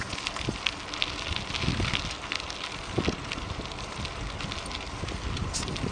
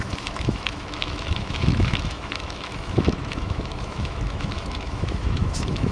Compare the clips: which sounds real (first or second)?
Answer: first